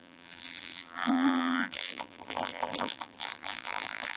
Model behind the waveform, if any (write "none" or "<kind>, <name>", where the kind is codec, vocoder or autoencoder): vocoder, BigVGAN v2